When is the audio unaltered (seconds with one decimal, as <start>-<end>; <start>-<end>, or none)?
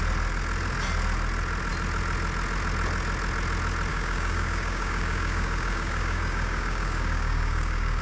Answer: 0.0-3.9